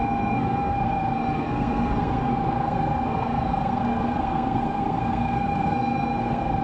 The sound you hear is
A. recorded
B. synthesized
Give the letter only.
B